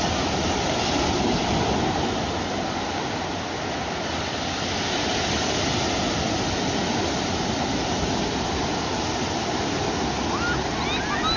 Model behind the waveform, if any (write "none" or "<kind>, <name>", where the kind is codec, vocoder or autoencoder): none